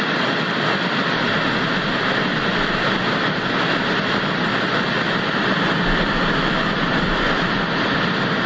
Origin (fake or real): real